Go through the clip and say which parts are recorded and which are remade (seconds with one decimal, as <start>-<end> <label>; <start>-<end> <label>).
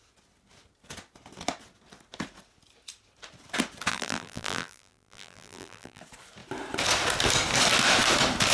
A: 0.0-3.9 recorded; 3.9-6.0 remade; 6.0-8.5 recorded